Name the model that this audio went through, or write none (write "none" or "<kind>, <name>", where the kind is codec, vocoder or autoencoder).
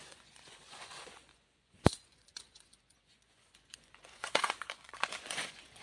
vocoder, Vocos